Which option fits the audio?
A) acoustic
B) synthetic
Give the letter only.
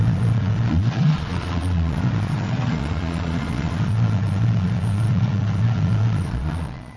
B